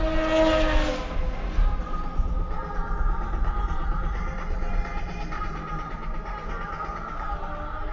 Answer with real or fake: real